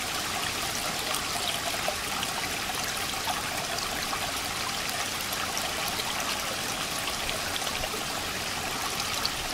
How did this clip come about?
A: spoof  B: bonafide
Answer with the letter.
B